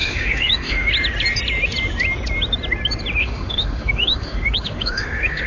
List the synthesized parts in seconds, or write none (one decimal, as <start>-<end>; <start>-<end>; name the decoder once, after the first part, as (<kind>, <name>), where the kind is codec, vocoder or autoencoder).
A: 0.0-0.9 (autoencoder, DAC-VAE); 3.2-5.5